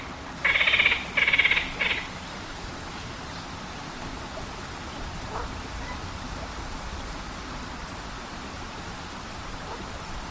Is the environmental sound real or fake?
real